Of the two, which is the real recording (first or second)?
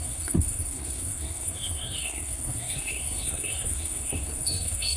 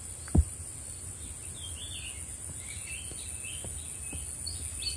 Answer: second